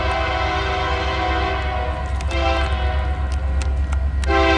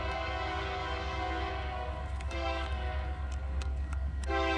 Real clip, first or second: first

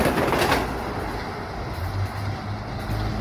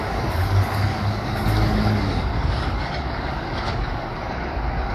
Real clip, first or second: first